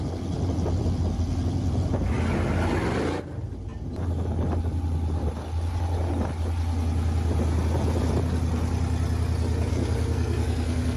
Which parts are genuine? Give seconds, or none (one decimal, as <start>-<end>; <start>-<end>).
0.0-9.7